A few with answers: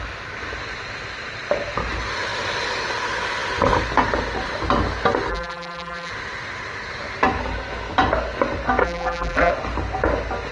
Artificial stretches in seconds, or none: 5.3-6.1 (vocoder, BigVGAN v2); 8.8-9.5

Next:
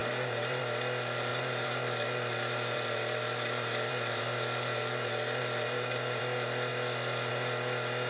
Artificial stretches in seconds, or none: 0.0-0.6 (vocoder, BigVGAN v2); 1.3-6.2